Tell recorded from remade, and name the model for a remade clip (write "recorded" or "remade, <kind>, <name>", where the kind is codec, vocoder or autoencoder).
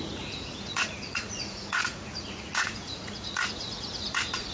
remade, vocoder, Vocos